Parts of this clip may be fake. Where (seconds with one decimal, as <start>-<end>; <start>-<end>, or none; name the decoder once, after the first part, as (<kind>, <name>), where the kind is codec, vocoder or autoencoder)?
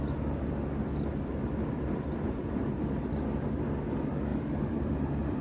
0.9-3.1 (vocoder, BigVGAN v2); 4.3-5.4